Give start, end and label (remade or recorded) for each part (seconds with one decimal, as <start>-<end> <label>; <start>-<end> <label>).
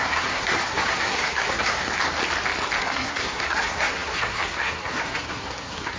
0.0-1.8 remade; 1.8-2.8 recorded; 2.8-6.0 remade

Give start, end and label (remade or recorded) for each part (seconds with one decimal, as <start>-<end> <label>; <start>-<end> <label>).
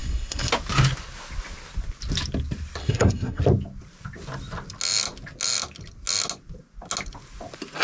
0.0-0.5 remade; 0.5-2.8 recorded; 2.8-3.4 remade; 3.4-7.8 recorded